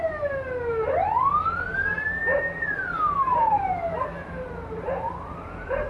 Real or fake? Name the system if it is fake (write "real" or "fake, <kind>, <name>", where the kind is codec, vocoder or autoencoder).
real